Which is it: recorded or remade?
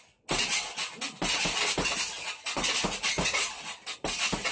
recorded